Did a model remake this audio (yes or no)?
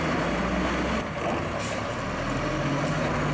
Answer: no